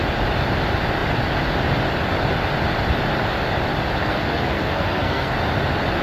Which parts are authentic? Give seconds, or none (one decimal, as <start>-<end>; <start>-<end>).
0.0-4.0; 5.3-6.0